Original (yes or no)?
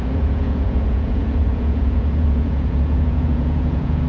no